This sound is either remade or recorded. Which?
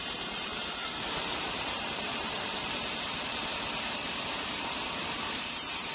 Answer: remade